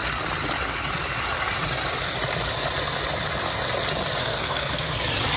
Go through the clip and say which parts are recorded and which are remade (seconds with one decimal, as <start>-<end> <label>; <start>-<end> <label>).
0.0-4.2 recorded; 4.2-4.9 remade; 4.9-5.4 recorded

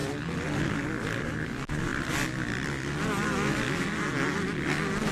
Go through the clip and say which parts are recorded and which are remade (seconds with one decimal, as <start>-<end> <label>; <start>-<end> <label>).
0.0-5.1 recorded

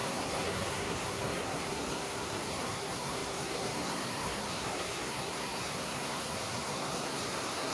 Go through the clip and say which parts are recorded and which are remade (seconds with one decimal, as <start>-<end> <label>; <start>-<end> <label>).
0.0-7.7 remade

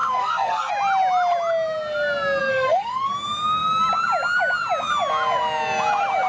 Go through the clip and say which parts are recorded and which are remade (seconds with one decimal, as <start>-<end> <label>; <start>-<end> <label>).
0.0-0.7 remade; 0.7-2.4 recorded; 2.4-3.1 remade; 3.1-6.3 recorded

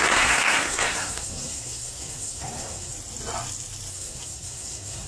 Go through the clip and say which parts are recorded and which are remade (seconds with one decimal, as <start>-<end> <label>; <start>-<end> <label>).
0.0-2.9 remade; 2.9-3.9 recorded; 3.9-5.1 remade

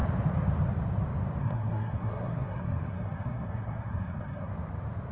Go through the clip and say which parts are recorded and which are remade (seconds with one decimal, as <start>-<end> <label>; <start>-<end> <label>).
0.0-1.4 recorded; 1.4-4.5 remade; 4.5-5.1 recorded

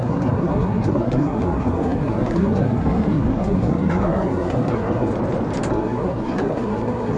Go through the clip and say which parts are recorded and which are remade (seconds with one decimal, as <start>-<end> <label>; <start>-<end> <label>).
0.0-5.1 remade; 5.1-5.7 recorded; 5.7-7.2 remade